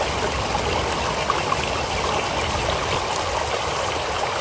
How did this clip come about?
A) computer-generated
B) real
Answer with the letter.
B